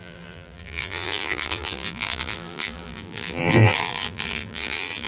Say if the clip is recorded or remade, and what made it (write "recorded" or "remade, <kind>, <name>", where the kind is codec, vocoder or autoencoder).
remade, vocoder, BigVGAN v2